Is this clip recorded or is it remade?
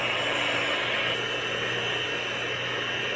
recorded